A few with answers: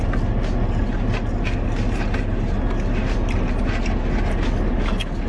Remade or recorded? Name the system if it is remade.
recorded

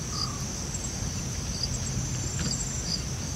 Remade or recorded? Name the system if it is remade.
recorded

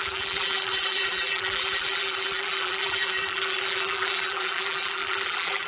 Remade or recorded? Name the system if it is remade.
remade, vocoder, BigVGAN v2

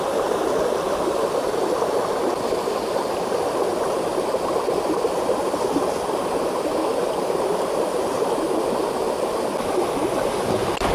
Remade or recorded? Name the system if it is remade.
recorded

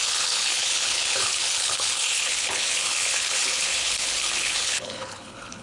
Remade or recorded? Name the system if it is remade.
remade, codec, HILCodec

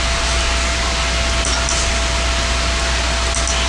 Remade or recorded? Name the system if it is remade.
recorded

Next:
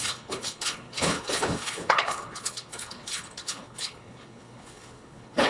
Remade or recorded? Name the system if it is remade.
remade, codec, HILCodec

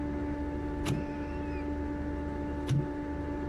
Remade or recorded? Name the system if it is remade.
recorded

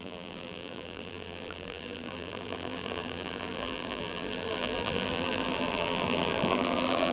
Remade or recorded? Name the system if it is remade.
remade, vocoder, BigVGAN v2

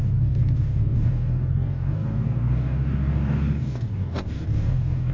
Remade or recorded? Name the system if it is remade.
remade, codec, DAC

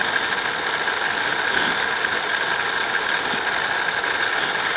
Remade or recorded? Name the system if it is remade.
recorded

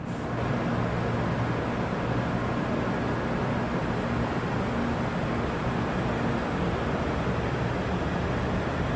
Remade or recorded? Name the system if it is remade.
recorded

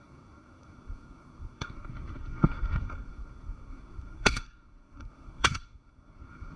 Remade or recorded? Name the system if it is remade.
remade, codec, SNAC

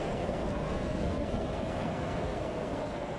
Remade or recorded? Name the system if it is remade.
remade, codec, SNAC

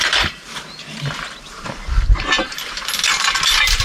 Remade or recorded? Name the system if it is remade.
remade, vocoder, BigVGAN v2